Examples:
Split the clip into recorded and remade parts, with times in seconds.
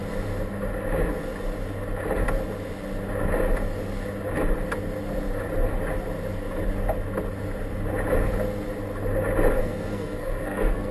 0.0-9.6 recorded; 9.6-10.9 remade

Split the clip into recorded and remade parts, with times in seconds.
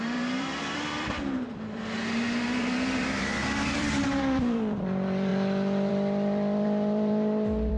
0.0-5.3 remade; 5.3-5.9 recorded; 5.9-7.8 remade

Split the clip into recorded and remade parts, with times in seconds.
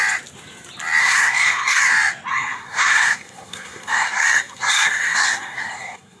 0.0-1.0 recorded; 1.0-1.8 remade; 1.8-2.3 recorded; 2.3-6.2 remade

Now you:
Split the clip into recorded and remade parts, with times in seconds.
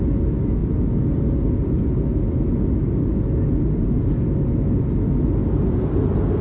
0.0-6.4 recorded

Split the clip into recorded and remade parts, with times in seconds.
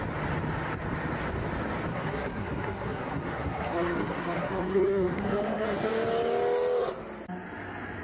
0.0-1.9 recorded; 1.9-5.9 remade; 5.9-8.0 recorded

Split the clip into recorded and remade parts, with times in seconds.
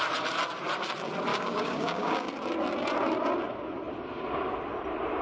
0.0-1.3 recorded; 1.3-2.3 remade; 2.3-5.2 recorded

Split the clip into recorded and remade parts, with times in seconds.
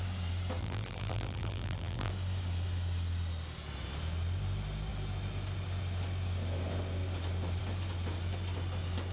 0.0-0.6 recorded; 0.6-2.1 remade; 2.1-9.1 recorded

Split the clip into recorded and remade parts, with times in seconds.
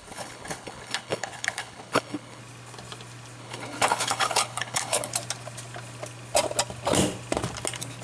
0.0-2.4 remade; 2.4-3.4 recorded; 3.4-5.1 remade; 5.1-8.0 recorded